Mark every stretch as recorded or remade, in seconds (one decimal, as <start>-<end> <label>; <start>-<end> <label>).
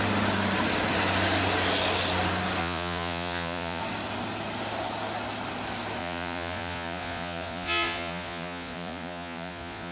0.0-2.6 recorded; 2.6-3.8 remade; 3.8-6.0 recorded; 6.0-9.9 remade